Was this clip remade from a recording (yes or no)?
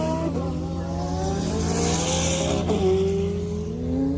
no